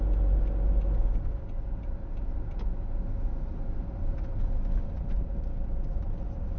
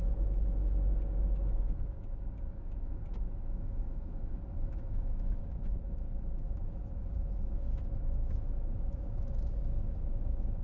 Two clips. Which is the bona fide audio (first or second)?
first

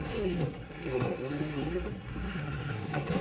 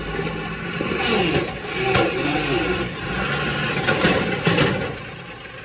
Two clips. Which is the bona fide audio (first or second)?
second